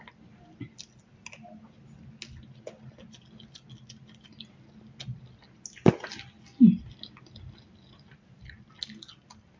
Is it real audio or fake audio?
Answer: real